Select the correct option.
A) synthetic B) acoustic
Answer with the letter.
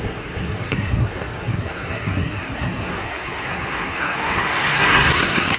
A